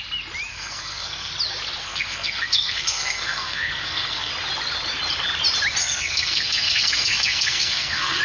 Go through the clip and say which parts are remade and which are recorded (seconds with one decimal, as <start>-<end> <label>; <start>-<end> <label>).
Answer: 0.0-0.5 recorded; 0.5-1.3 remade; 1.3-1.8 recorded; 1.8-4.3 remade; 4.3-5.8 recorded; 5.8-8.2 remade